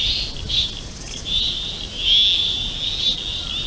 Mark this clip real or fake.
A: real